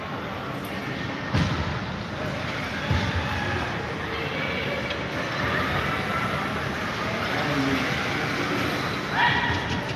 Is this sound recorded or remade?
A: recorded